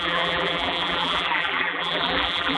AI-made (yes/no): yes